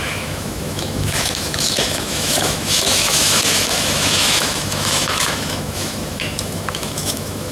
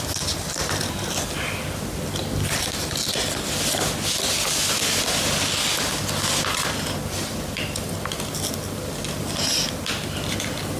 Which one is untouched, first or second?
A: second